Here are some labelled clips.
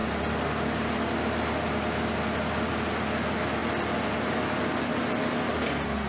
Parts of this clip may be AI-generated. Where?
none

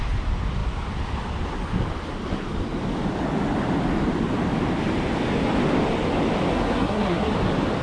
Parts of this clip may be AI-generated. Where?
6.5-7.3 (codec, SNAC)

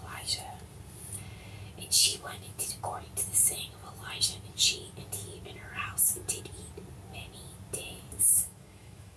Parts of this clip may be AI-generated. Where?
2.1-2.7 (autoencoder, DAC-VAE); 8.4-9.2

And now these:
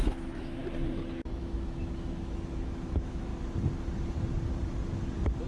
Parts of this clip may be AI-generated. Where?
0.0-0.6 (autoencoder, DAC-VAE); 1.4-3.3

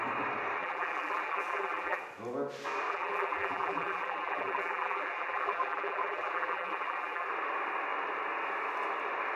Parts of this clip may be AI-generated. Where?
0.6-2.0 (vocoder, BigVGAN v2); 2.9-7.3